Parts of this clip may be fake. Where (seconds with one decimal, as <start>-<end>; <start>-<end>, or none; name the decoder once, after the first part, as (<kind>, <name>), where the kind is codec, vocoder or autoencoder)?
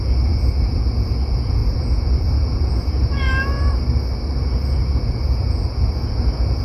0.0-3.3 (vocoder, Vocos); 4.7-6.6